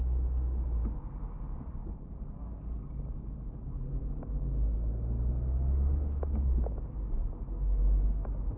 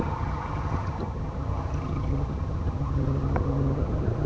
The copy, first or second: second